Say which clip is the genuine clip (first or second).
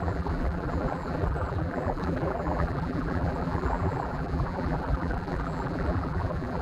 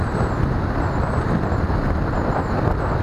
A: second